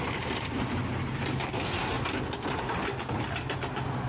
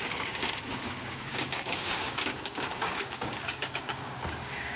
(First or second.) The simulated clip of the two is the second